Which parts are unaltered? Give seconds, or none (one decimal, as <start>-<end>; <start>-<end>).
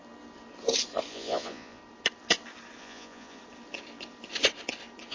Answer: 0.0-1.1; 1.8-2.8; 3.4-5.1